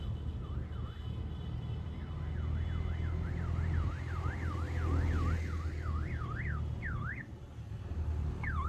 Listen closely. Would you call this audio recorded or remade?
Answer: recorded